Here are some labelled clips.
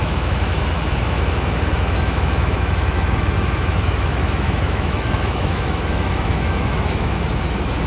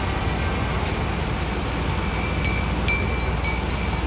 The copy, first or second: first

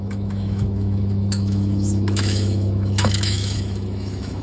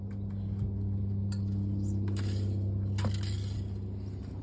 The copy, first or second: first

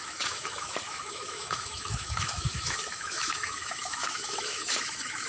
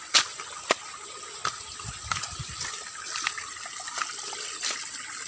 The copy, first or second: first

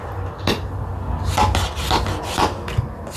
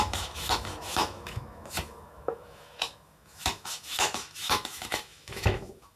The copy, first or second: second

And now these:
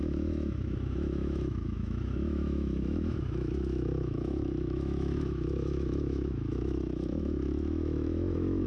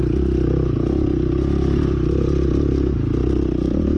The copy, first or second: first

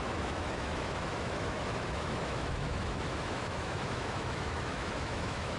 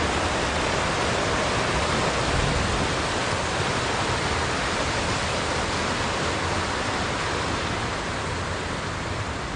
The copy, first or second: first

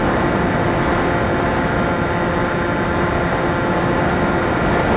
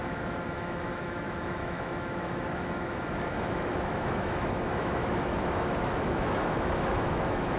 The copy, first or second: second